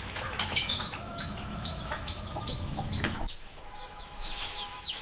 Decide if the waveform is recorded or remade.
remade